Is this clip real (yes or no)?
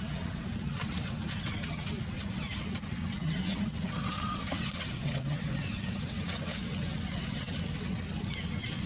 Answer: no